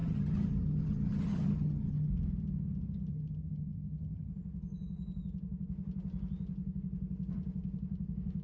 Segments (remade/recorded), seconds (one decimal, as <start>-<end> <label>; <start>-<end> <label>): 0.0-2.1 remade; 2.1-3.1 recorded; 3.1-4.3 remade; 4.3-8.4 recorded